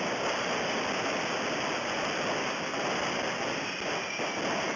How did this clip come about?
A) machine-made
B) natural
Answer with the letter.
B